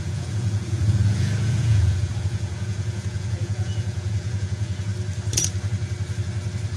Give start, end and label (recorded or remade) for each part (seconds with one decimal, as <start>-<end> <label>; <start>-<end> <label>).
0.0-4.9 remade; 4.9-6.8 recorded